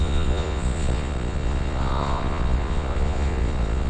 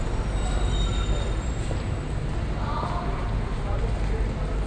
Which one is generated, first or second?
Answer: first